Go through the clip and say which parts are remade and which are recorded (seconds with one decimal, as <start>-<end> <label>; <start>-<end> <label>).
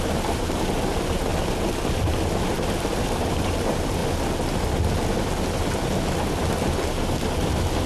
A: 0.0-1.3 remade; 1.3-3.0 recorded; 3.0-4.0 remade; 4.0-7.9 recorded